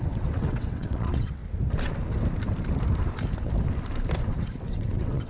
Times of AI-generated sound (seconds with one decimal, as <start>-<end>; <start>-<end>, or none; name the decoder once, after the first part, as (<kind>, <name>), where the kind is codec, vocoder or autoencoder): 0.0-1.4 (vocoder, WaveNeXt); 4.6-5.3